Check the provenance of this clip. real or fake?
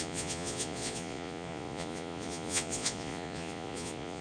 fake